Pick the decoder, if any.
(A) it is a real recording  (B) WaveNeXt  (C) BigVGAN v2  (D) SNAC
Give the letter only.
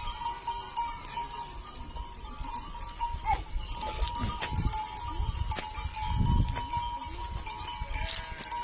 A